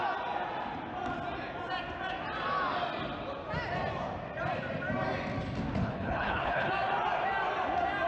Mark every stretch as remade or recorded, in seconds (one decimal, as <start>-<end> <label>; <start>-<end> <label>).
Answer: 0.0-5.8 recorded; 5.8-6.7 remade; 6.7-8.1 recorded